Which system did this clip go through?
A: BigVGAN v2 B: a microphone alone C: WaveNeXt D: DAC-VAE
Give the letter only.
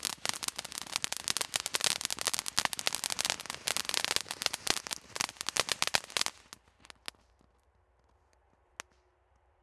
B